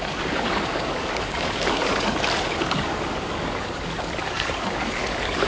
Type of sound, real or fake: fake